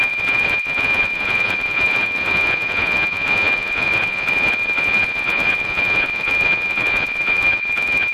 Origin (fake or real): fake